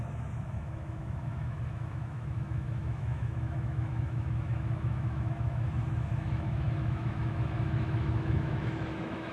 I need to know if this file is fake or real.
fake